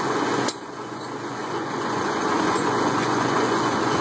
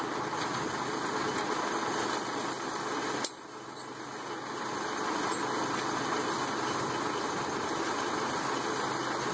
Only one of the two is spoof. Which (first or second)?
first